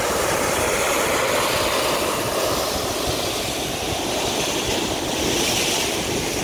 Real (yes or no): yes